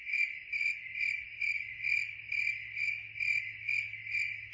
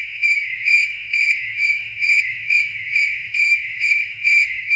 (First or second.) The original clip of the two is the first